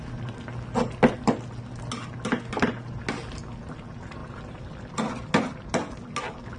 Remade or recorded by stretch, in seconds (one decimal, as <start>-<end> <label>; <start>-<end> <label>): 0.0-4.2 recorded; 4.2-5.1 remade; 5.1-6.6 recorded